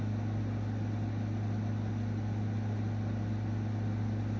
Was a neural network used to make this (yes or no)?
no